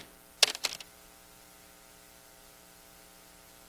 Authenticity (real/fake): real